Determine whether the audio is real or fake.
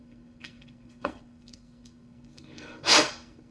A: fake